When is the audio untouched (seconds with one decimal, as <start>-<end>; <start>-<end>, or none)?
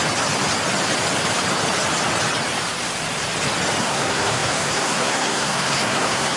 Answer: 0.0-3.8